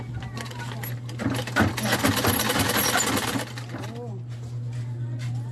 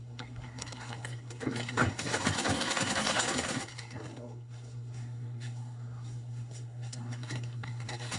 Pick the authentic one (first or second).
first